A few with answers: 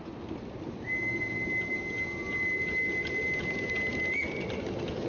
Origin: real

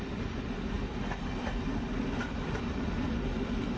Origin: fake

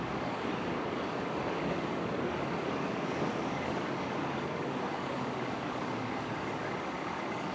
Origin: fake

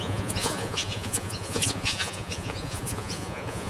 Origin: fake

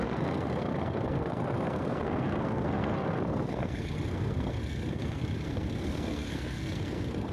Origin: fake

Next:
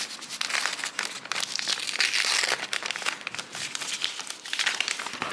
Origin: real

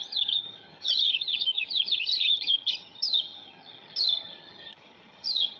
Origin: fake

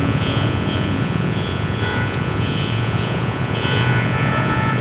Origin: fake